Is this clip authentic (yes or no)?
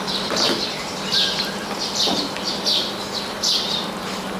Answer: yes